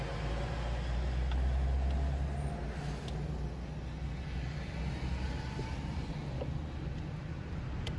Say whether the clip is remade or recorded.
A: recorded